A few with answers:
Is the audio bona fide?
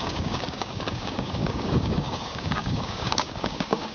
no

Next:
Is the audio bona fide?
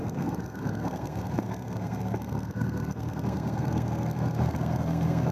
no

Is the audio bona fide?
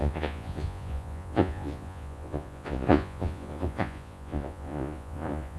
no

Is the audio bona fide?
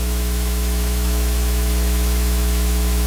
no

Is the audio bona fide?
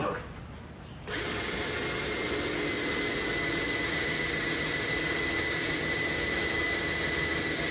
yes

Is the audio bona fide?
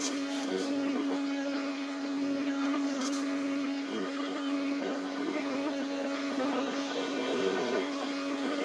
no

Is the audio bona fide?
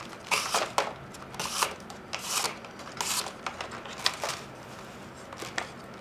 yes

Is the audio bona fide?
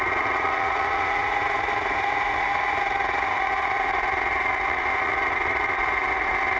no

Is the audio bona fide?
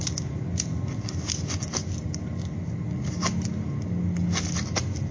yes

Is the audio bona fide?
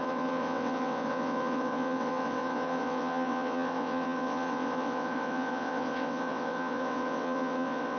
no